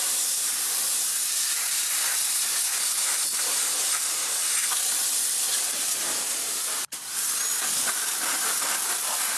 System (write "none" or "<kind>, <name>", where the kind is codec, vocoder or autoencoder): vocoder, BigVGAN v2